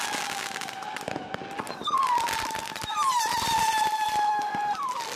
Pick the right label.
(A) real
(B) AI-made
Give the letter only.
A